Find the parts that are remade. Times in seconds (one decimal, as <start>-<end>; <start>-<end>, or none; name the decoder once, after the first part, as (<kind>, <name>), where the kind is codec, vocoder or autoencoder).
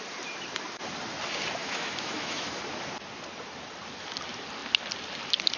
1.6-2.6 (autoencoder, DAC-VAE)